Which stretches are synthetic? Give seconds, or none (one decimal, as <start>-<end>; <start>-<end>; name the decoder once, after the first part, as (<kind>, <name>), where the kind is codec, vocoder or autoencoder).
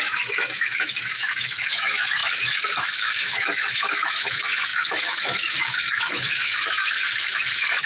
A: 0.0-7.9 (autoencoder, DAC-VAE)